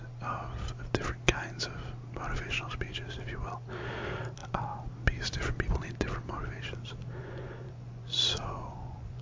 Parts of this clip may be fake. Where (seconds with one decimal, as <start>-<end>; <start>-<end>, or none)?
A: 7.2-9.2